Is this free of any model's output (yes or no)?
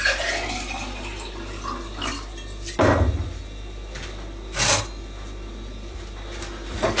yes